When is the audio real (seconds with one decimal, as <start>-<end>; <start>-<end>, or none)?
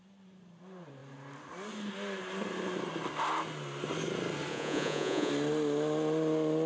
0.0-4.5; 5.3-6.7